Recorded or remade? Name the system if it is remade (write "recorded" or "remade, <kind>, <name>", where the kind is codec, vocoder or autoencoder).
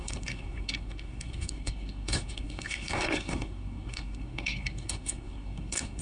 remade, codec, SNAC